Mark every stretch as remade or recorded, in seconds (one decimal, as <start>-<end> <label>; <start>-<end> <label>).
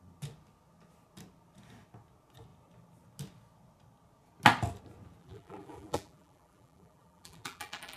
0.0-5.2 recorded; 5.2-8.0 remade